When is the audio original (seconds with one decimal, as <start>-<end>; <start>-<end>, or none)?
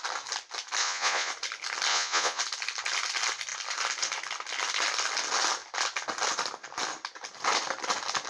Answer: 0.0-0.8; 1.3-1.9; 2.4-8.3